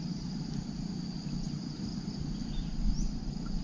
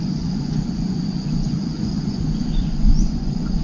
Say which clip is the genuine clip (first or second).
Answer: first